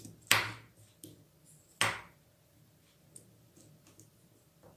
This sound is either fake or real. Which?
real